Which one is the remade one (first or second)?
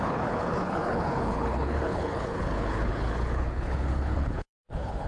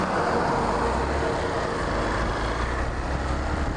first